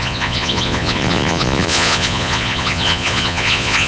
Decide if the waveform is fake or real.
fake